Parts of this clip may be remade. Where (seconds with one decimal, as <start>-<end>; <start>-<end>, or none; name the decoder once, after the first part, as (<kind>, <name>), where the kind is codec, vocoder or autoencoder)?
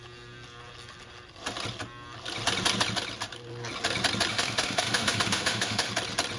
4.3-5.9 (autoencoder, DAC-VAE)